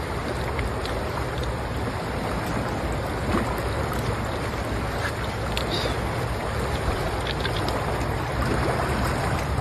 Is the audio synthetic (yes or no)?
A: no